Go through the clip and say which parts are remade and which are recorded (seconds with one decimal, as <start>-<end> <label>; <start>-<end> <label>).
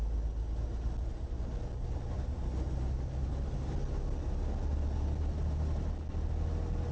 0.0-6.9 recorded